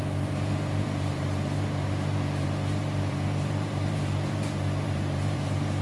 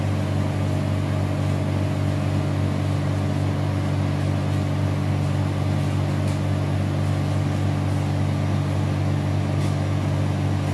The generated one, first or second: first